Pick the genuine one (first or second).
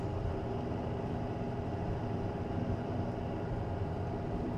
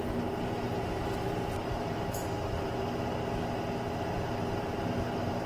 second